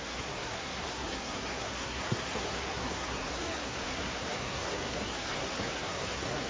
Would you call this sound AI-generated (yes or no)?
yes